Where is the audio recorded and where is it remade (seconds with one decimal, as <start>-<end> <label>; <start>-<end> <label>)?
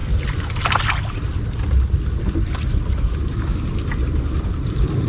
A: 0.0-5.1 recorded